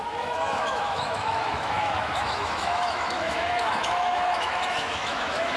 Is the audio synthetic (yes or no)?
yes